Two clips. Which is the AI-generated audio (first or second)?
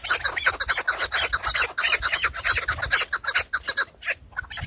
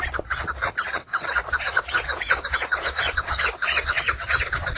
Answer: second